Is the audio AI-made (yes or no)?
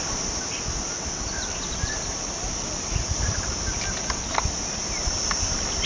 no